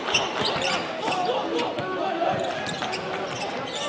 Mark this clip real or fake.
real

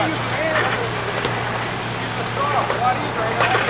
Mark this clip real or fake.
real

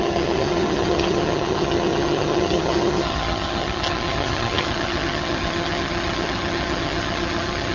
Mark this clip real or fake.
fake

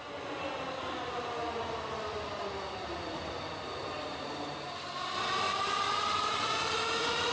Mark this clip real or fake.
real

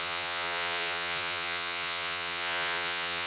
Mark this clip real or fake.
fake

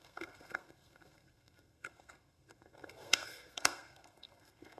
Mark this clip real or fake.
fake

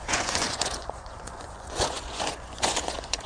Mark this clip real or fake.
fake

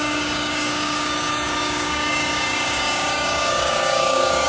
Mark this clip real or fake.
fake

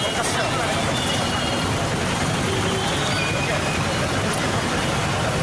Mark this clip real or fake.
real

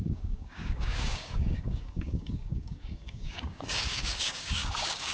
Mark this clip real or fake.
fake